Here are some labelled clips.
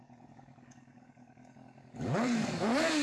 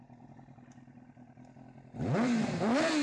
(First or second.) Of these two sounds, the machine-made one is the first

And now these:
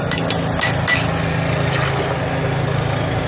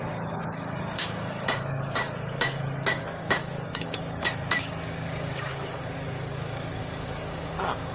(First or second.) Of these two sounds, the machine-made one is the second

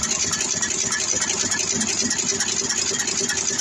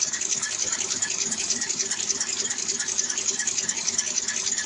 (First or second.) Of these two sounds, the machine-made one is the second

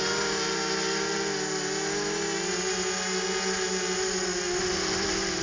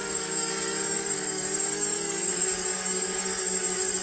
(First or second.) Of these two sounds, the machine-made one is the second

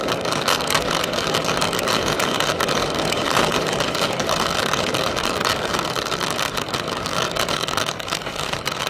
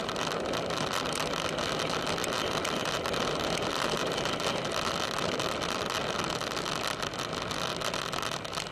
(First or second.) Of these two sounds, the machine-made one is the first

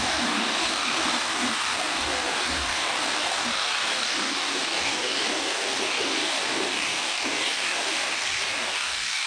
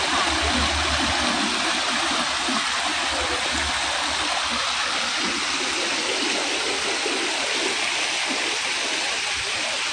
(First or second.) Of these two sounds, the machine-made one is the first